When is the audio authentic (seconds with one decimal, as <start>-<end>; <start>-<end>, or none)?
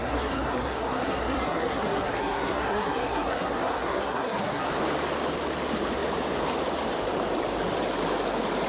4.7-8.7